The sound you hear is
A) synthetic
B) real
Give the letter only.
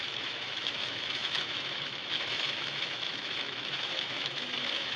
A